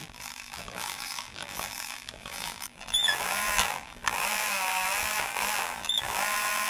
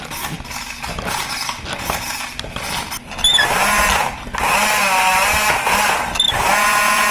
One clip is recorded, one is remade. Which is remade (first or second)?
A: first